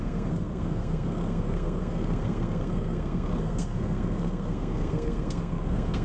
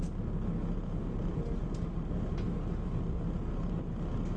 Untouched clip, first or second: second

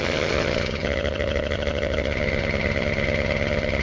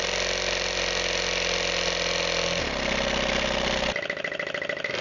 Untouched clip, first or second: second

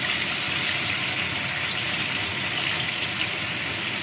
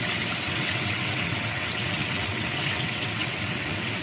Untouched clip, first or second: first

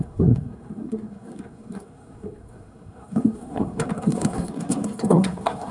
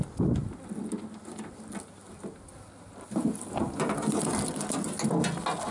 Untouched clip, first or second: second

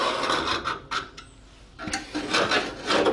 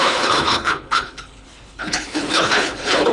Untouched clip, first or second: first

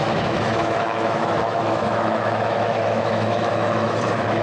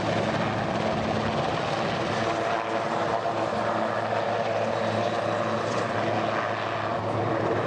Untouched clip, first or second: second